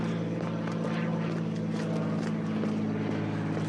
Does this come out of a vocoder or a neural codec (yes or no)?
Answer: no